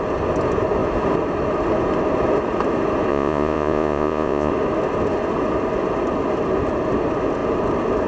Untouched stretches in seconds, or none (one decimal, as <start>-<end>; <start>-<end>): 0.0-3.1; 4.5-8.1